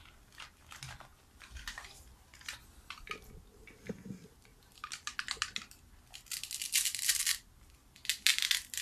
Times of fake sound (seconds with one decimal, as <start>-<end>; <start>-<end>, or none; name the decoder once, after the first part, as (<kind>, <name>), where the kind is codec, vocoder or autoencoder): none